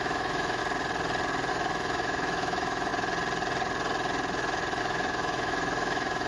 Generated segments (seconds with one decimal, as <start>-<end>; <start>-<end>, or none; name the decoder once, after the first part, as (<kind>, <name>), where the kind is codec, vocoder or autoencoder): 0.0-0.6 (autoencoder, DAC-VAE); 1.5-2.9; 4.8-6.3